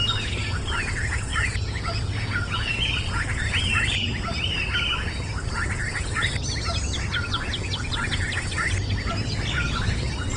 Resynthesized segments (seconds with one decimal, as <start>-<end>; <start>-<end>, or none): 1.3-2.7